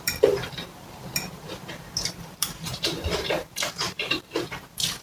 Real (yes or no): no